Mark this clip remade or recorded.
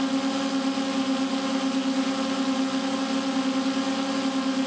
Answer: recorded